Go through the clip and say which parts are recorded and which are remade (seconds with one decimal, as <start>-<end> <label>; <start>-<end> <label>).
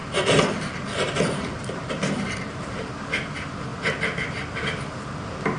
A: 0.0-2.9 remade; 2.9-5.6 recorded